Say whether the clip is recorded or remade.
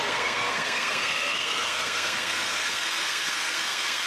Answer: remade